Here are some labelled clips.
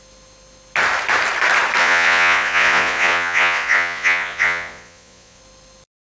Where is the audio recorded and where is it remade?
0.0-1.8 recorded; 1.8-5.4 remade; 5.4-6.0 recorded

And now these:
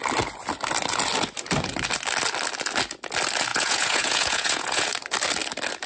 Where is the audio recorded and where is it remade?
0.0-3.5 recorded; 3.5-4.9 remade; 4.9-5.9 recorded

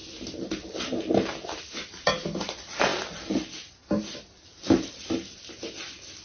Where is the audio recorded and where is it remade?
0.0-6.2 recorded

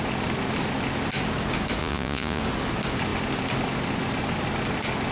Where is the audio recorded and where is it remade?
0.0-1.8 recorded; 1.8-2.4 remade; 2.4-5.1 recorded